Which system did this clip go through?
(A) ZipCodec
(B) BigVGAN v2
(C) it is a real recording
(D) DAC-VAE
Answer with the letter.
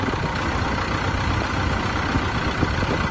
C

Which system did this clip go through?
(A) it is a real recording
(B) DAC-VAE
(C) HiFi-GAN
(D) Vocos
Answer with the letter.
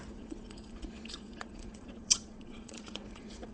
D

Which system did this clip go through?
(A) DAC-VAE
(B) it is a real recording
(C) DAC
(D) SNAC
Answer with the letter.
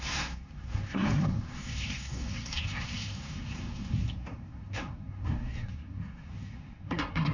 D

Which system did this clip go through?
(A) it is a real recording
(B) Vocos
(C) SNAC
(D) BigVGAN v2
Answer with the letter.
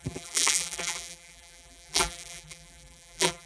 D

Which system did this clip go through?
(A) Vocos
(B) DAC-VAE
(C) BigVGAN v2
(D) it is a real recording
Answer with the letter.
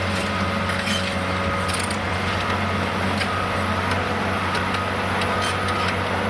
D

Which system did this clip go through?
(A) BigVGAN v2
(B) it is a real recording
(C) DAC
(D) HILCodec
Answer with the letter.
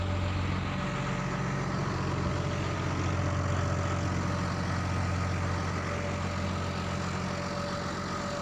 B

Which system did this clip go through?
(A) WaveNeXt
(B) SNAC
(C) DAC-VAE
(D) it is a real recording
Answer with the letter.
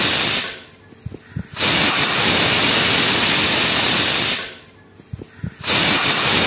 D